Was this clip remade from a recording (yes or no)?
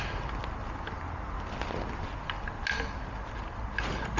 no